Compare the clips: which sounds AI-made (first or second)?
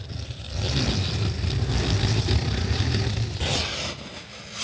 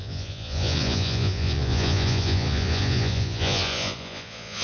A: second